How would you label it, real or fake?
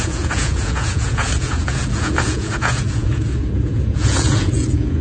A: fake